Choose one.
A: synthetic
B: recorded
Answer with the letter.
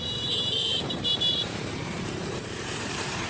A